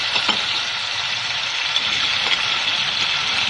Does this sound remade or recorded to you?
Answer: recorded